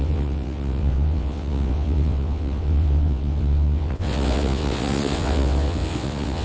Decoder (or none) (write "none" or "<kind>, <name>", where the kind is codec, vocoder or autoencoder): vocoder, WaveNeXt